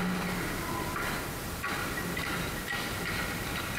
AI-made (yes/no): no